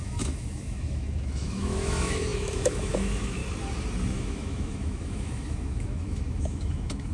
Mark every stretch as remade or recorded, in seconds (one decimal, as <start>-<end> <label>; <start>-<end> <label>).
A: 0.0-3.4 remade; 3.4-4.1 recorded; 4.1-7.1 remade